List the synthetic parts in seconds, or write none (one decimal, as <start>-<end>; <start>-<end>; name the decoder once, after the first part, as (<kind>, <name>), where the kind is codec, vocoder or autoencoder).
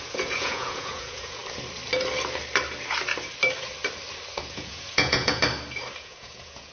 0.0-1.4 (vocoder, Vocos); 4.5-5.4; 6.0-6.7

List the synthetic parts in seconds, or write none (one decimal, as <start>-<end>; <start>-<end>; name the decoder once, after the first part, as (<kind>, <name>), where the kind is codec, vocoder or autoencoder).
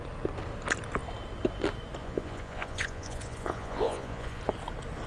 2.0-4.4 (vocoder, Vocos)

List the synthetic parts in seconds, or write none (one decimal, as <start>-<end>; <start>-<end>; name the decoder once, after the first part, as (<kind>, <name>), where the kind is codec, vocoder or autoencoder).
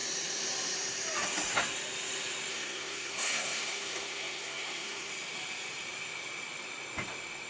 2.5-5.1 (codec, SNAC)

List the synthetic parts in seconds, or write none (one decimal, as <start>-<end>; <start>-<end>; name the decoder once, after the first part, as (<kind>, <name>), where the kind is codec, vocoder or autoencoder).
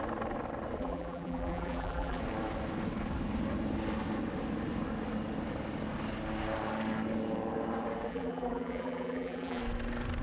0.8-2.2 (vocoder, BigVGAN v2); 8.1-9.6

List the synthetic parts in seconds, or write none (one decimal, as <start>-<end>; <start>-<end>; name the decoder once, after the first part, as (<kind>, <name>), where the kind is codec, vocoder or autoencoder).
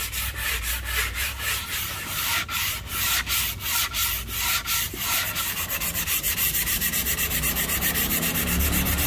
0.0-4.0 (vocoder, BigVGAN v2); 5.4-9.1